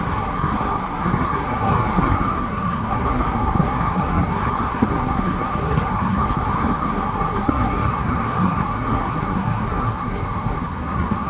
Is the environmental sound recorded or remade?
remade